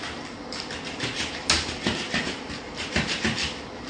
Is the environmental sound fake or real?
real